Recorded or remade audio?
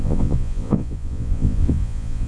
remade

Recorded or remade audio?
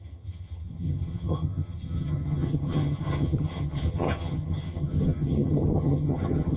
remade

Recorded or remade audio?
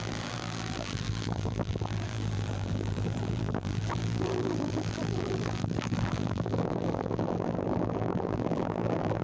remade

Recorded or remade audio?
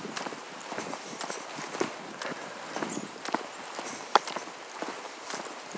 recorded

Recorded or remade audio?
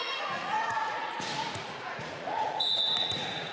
remade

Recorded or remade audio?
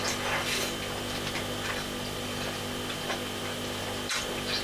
recorded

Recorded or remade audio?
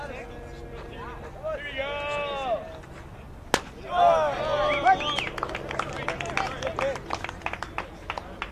recorded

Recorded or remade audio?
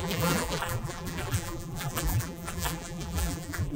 remade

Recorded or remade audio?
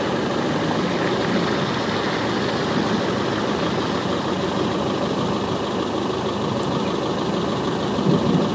recorded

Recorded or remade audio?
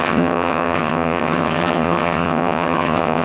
remade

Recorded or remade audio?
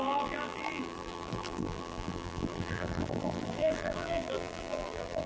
remade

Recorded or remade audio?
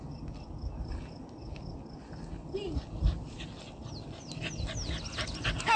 recorded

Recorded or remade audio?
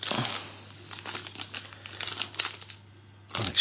recorded